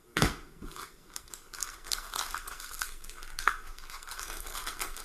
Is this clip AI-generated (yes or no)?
yes